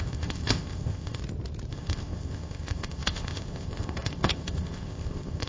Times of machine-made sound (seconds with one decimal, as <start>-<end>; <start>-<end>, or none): 0.0-1.2; 1.7-5.5